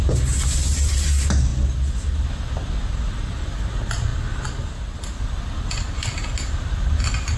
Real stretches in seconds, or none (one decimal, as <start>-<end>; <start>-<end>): 0.0-7.4